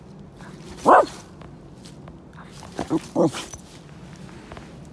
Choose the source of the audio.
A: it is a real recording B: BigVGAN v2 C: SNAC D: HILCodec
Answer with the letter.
A